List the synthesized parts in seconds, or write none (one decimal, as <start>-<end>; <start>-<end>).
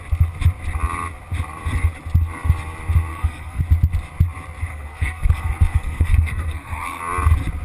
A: 3.1-3.6; 4.7-7.0